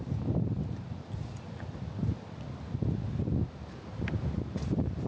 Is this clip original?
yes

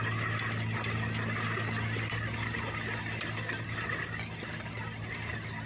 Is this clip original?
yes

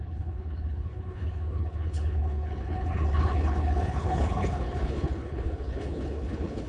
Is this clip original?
no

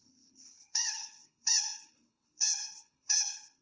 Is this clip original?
no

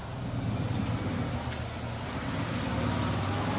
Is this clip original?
yes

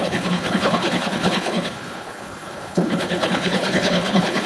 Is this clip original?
no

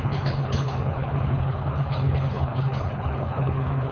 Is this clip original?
no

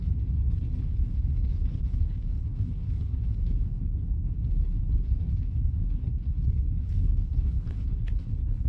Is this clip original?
no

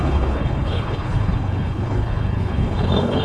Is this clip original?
no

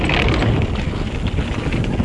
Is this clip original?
yes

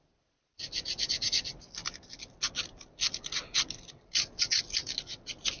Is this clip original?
yes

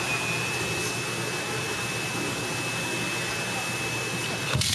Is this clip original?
yes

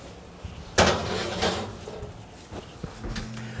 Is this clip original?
yes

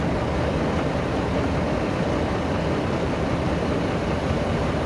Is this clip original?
yes